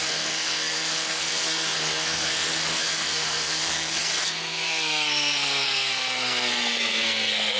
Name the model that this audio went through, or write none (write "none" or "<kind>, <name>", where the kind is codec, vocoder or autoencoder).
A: codec, SNAC